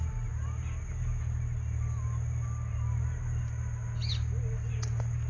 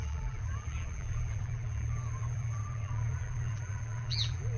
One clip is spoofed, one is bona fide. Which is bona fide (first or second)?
first